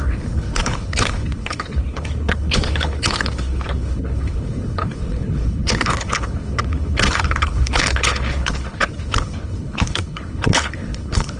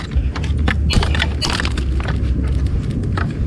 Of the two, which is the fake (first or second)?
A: first